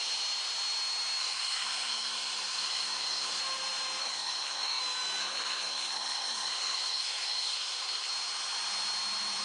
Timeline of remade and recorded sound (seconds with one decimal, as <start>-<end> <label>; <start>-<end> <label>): 0.0-1.2 recorded; 1.2-3.4 remade; 3.4-4.0 recorded; 4.0-4.8 remade; 4.8-5.2 recorded; 5.2-8.1 remade; 8.1-9.4 recorded